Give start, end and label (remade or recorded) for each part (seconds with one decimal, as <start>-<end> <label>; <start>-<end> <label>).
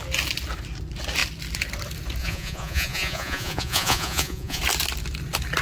0.0-2.2 recorded; 2.2-4.6 remade; 4.6-5.6 recorded